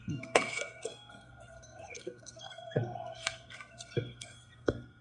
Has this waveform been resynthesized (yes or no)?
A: yes